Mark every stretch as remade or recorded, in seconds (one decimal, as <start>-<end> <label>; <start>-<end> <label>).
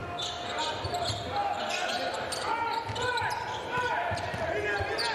0.0-5.1 recorded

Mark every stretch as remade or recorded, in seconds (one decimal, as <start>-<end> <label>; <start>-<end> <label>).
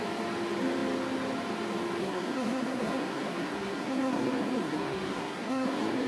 0.0-2.0 recorded; 2.0-6.1 remade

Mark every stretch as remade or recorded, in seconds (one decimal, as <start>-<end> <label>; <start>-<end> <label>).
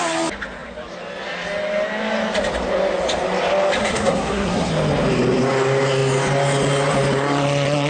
0.0-3.8 recorded; 3.8-4.7 remade; 4.7-7.9 recorded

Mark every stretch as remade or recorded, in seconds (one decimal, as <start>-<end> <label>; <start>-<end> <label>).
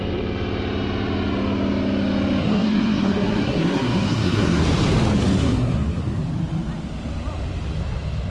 0.0-2.4 recorded; 2.4-4.6 remade; 4.6-5.4 recorded; 5.4-6.0 remade; 6.0-8.3 recorded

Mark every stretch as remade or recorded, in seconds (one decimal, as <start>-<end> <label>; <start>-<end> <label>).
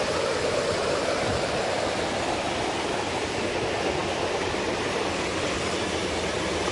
0.0-6.7 recorded